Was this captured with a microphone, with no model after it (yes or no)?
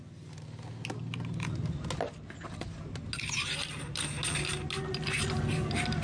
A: yes